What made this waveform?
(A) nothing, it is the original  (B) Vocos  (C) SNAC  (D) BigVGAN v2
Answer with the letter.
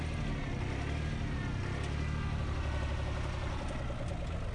A